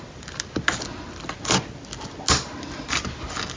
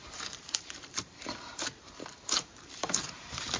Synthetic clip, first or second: second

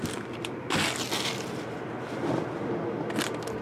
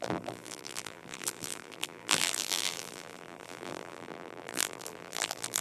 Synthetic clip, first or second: second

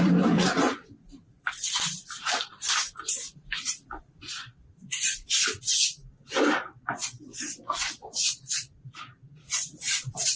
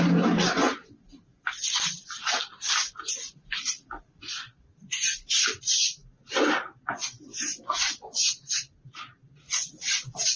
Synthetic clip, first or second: first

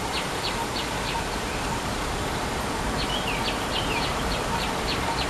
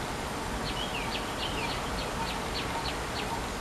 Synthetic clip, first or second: first